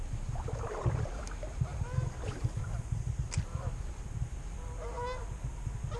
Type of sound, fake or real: real